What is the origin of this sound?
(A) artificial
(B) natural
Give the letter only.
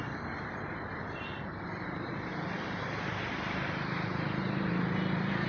A